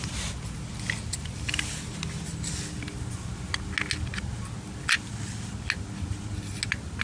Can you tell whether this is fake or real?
real